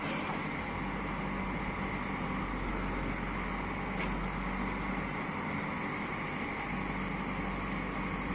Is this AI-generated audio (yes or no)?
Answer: no